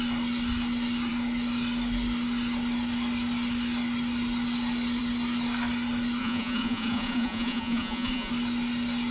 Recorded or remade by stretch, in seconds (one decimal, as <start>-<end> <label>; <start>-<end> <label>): 0.0-6.2 recorded; 6.2-8.3 remade; 8.3-9.1 recorded